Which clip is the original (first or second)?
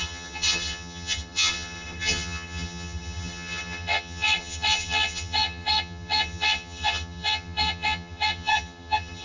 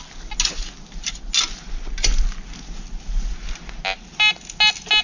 second